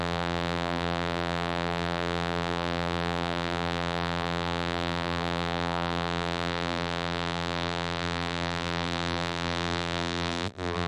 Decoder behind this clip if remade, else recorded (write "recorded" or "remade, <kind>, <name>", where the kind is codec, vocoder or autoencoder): remade, vocoder, BigVGAN v2